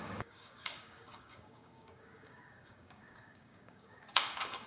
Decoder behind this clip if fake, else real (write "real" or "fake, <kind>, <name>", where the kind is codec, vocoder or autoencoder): fake, codec, DAC